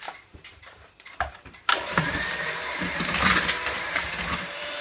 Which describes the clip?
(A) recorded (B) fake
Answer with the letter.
B